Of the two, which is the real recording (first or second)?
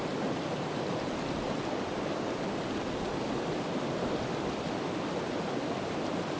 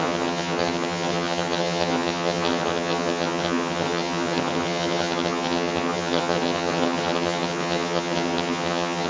first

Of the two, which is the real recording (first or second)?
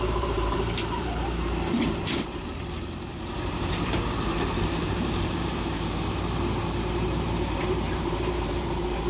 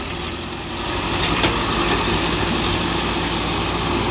second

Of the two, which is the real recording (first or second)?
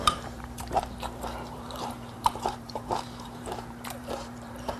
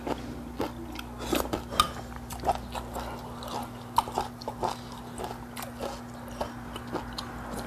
second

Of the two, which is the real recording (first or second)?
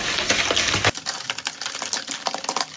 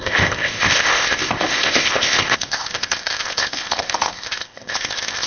first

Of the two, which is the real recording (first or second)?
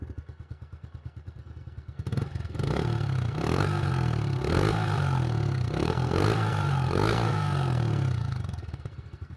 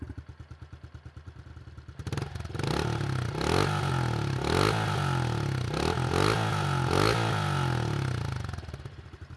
second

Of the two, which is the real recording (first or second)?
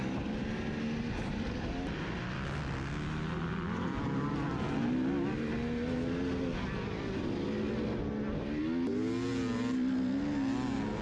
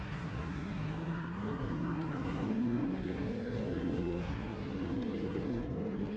first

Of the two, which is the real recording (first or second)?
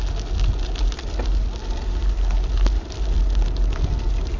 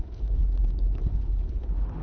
first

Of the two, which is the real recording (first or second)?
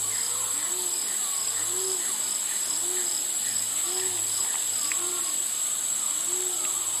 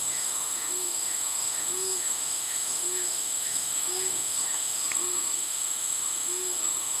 first